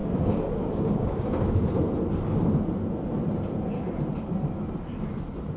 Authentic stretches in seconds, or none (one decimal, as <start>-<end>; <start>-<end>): 1.6-5.6

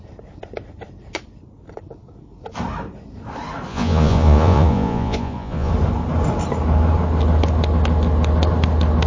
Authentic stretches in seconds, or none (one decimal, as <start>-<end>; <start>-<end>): 0.0-3.7; 5.7-9.1